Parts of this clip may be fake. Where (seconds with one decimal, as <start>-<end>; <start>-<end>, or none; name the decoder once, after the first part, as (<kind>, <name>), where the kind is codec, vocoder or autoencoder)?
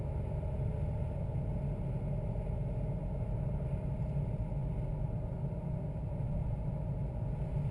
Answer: none